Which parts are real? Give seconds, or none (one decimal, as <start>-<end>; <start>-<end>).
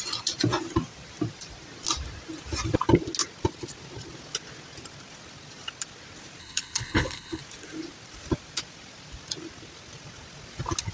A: 0.0-6.4; 7.4-10.9